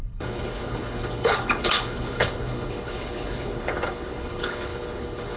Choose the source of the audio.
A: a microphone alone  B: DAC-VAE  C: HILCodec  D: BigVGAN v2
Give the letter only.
C